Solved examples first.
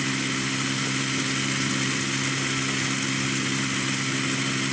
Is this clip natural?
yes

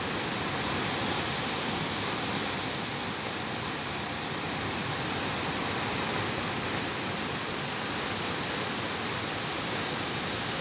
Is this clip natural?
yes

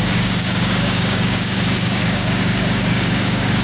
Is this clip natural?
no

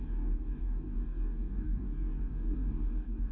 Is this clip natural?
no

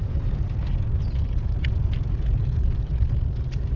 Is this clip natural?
yes